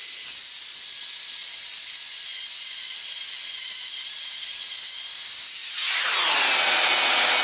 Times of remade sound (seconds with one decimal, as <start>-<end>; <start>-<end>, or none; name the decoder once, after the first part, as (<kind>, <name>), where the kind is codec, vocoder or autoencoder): none